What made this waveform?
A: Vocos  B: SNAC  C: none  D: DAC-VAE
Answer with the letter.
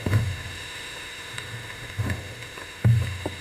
D